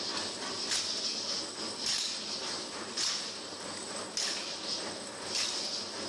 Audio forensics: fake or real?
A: real